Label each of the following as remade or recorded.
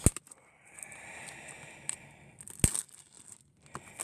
recorded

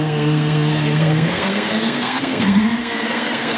remade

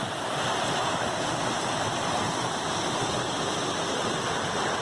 recorded